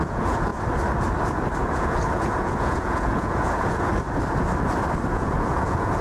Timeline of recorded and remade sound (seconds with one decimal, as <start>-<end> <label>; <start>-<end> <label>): 0.0-0.5 remade; 0.5-1.6 recorded; 1.6-3.9 remade; 3.9-5.1 recorded; 5.1-6.0 remade